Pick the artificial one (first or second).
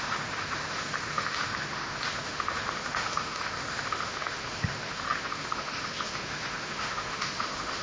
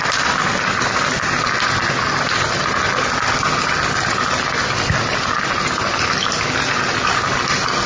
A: first